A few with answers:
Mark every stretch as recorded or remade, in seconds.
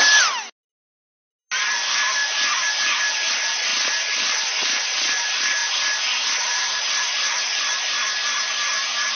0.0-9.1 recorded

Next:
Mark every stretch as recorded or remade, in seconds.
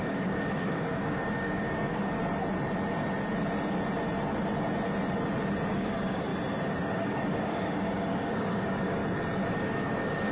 0.0-2.2 remade; 2.2-5.7 recorded; 5.7-6.3 remade; 6.3-6.9 recorded; 6.9-9.0 remade; 9.0-9.5 recorded; 9.5-10.3 remade